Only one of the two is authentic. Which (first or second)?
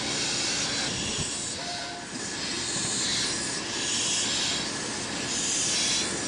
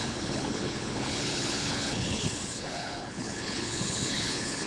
first